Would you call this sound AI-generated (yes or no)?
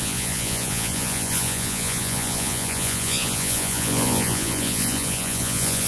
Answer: yes